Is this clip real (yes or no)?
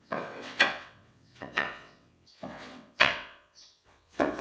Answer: no